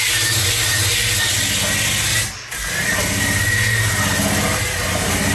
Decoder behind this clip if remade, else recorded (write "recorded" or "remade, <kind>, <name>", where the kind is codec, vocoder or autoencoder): recorded